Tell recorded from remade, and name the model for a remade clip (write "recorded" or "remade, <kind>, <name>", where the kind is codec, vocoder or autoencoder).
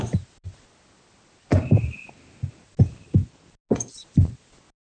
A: recorded